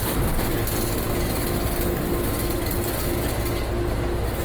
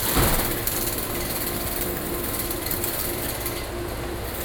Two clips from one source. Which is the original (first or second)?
first